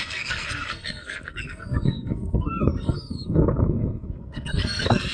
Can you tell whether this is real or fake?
fake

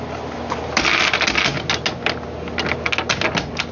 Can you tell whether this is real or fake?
real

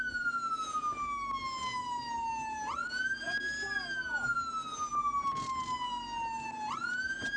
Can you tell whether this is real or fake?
real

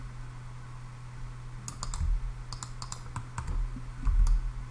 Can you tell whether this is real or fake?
real